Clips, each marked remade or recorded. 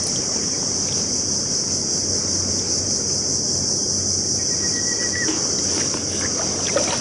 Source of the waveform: recorded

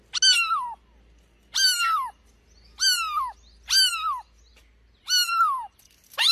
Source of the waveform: recorded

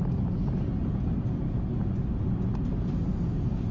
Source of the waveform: recorded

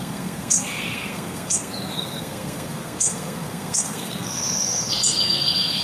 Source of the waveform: remade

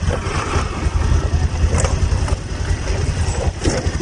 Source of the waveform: recorded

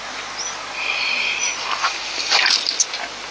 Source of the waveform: recorded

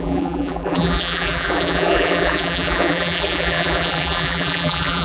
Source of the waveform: remade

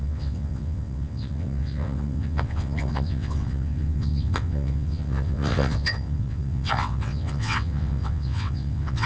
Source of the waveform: remade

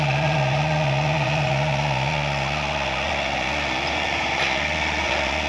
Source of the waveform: remade